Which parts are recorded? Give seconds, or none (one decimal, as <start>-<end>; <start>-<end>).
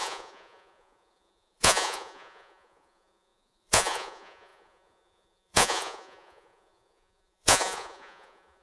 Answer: none